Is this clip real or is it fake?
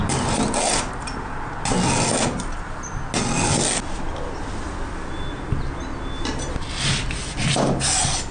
real